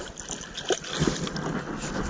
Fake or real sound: real